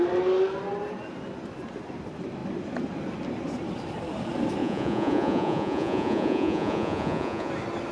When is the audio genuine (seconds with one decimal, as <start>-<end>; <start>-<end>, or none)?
0.0-4.6; 7.5-7.9